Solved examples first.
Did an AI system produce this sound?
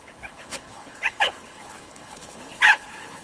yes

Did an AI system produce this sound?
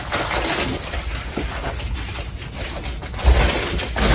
no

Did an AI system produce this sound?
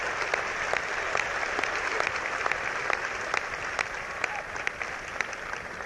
no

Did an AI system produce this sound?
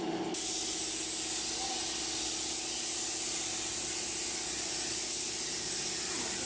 no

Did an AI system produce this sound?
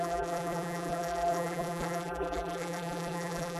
yes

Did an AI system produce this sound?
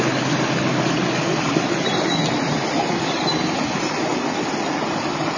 no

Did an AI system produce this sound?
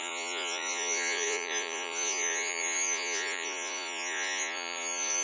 yes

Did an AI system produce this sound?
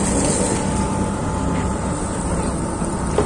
no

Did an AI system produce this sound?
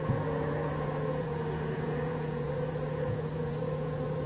yes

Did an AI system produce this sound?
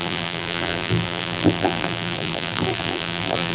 yes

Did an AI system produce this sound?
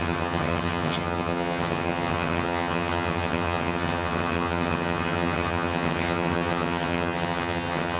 yes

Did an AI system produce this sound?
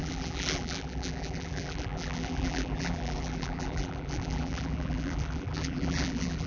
yes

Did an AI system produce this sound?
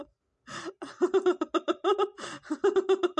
no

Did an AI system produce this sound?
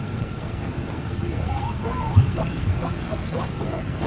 yes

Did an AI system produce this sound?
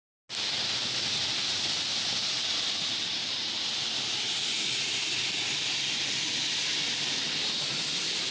no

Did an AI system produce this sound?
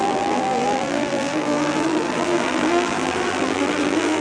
yes